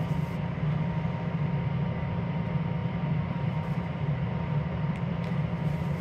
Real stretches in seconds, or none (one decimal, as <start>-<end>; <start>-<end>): 0.0-2.8; 5.4-6.0